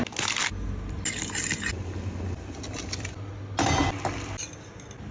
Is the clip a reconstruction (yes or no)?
no